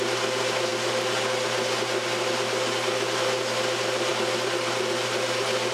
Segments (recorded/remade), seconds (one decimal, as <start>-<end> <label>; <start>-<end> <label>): 0.0-5.7 recorded